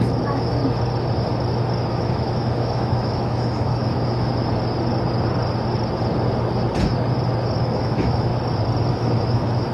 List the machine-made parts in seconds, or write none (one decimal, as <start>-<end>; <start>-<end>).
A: 0.0-0.6; 1.9-4.3; 7.6-8.3; 8.9-9.7